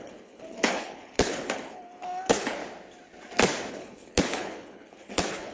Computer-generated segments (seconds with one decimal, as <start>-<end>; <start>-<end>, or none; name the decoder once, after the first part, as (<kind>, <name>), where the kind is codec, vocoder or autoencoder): 0.0-2.6 (codec, HILCodec); 3.7-5.5